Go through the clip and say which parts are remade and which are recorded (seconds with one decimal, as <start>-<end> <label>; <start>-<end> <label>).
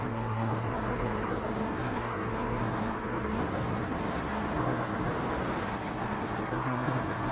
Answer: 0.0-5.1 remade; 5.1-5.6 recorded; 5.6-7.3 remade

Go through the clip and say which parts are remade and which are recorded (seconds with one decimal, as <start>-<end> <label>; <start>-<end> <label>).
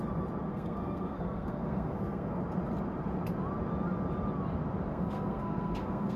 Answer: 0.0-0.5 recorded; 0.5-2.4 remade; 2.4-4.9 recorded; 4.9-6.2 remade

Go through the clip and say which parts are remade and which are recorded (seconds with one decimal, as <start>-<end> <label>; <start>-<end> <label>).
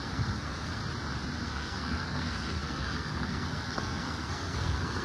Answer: 0.0-0.8 remade; 0.8-1.4 recorded; 1.4-5.0 remade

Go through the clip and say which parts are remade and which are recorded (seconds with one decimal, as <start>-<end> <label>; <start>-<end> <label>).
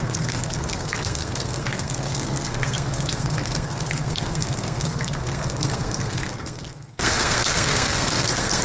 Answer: 0.0-8.6 remade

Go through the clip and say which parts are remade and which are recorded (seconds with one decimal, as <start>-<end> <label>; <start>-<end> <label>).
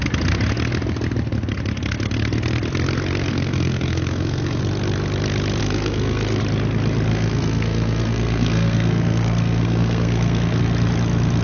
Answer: 0.0-3.3 recorded; 3.3-4.6 remade; 4.6-5.6 recorded; 5.6-6.4 remade; 6.4-7.1 recorded; 7.1-10.6 remade; 10.6-11.4 recorded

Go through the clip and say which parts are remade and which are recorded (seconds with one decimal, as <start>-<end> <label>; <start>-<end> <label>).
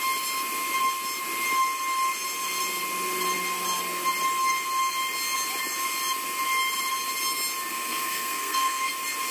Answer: 0.0-7.7 recorded; 7.7-8.9 remade; 8.9-9.3 recorded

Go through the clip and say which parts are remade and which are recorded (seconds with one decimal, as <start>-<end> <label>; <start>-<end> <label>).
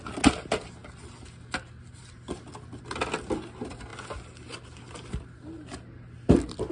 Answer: 0.0-6.7 recorded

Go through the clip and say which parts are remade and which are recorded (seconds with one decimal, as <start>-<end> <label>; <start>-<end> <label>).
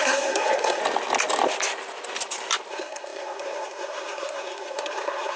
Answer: 0.0-0.8 remade; 0.8-2.7 recorded; 2.7-5.4 remade